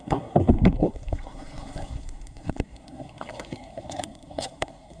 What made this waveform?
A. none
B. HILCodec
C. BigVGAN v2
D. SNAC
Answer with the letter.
D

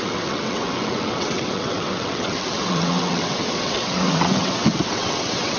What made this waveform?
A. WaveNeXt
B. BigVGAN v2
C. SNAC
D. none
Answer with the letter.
A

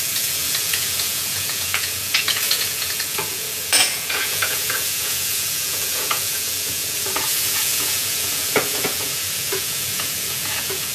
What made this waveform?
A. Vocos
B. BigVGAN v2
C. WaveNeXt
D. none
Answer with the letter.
A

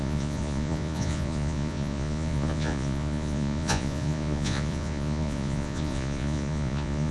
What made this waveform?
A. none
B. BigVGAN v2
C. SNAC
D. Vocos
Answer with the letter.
D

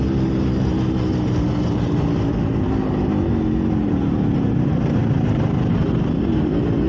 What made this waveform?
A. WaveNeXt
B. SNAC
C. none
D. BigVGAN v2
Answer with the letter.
C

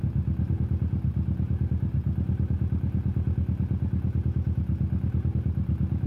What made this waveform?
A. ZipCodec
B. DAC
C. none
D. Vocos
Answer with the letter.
C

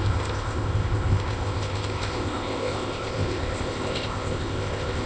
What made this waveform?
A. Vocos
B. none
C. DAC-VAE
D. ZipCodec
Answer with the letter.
D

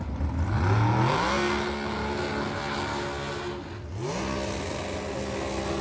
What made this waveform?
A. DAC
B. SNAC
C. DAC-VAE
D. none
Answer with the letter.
D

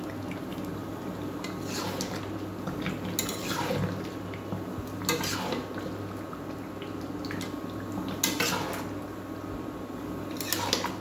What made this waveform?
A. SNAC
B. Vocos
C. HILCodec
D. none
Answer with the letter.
D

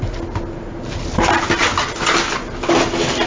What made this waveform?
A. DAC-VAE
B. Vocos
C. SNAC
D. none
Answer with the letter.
D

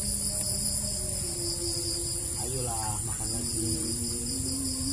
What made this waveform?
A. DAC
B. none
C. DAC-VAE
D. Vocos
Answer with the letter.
B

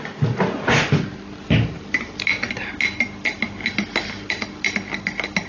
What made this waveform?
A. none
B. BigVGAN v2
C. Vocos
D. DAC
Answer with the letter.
A